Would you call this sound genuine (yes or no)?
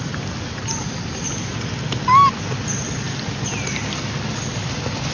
yes